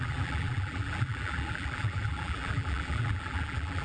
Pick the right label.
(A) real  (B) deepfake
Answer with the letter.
B